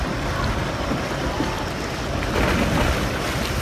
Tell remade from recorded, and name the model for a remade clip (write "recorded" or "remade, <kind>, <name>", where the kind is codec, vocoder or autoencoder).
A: recorded